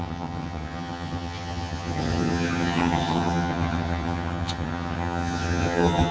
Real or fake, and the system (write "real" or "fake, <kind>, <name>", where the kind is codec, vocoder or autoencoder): fake, vocoder, HiFi-GAN